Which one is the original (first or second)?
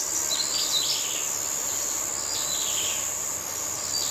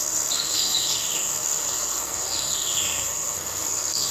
first